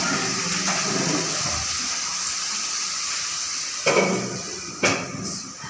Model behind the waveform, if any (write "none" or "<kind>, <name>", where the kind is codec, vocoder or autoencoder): none